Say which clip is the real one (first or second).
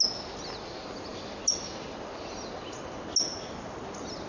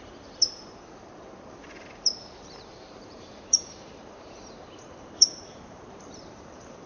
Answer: first